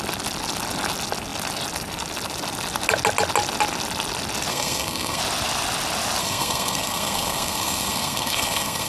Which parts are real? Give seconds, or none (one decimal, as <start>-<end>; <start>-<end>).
0.0-4.5; 5.2-6.2